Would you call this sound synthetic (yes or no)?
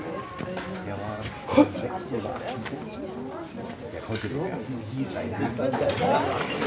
no